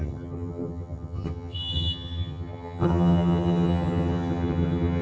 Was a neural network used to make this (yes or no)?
yes